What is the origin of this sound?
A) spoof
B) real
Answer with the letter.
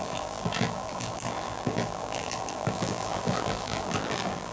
A